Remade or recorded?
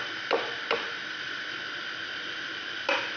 recorded